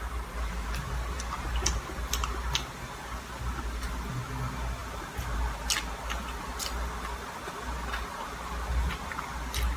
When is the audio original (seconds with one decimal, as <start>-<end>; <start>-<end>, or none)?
0.0-9.8